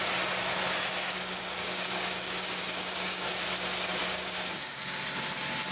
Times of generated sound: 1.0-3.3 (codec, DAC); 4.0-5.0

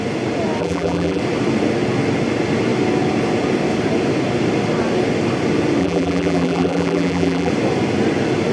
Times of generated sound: 0.6-1.2 (vocoder, BigVGAN v2); 5.8-7.5

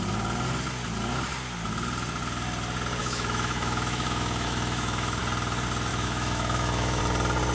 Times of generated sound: 3.0-5.2 (autoencoder, DAC-VAE); 5.9-7.0

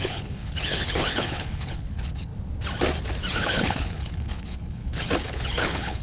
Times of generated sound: 0.0-2.3 (codec, HILCodec); 3.3-6.0

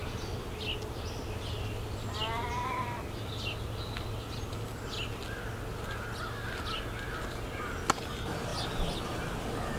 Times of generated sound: none